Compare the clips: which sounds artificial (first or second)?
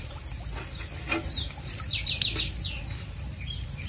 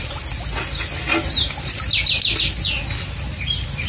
first